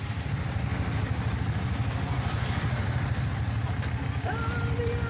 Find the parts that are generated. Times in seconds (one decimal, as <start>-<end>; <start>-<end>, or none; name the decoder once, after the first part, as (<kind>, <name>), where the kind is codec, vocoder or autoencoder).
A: none